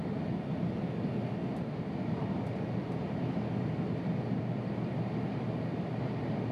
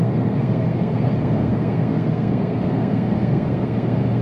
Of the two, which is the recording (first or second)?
first